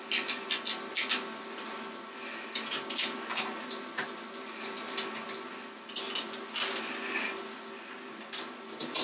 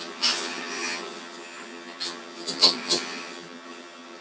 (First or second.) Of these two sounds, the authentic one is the first